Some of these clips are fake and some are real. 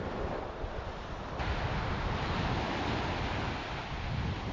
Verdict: real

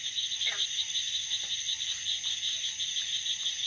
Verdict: real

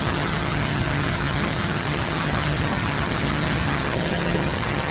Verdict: fake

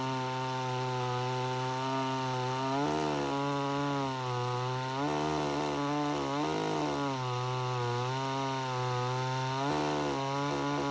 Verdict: real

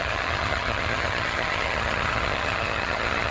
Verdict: fake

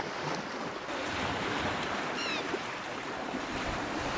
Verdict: real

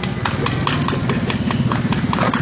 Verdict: real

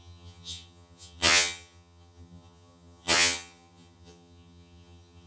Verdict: fake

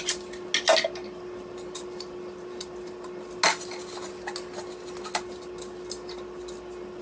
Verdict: real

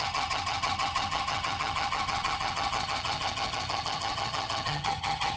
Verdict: fake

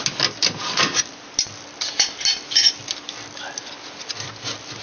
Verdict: real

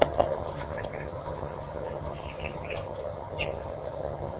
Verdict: fake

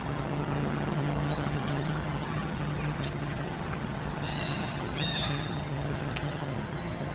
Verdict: fake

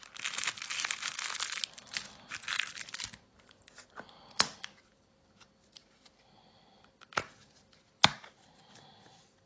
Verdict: real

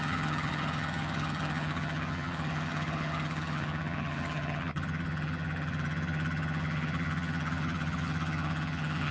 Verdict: fake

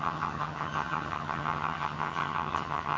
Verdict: fake